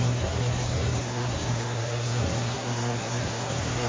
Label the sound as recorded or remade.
remade